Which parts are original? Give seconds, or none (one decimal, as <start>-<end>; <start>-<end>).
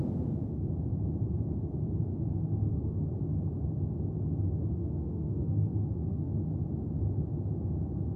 0.0-2.1; 3.1-4.8; 6.3-8.2